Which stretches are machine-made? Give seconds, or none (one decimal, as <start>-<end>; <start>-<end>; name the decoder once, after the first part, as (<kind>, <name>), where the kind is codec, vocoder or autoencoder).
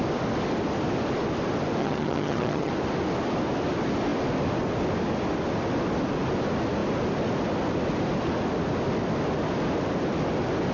1.8-2.7 (vocoder, HiFi-GAN)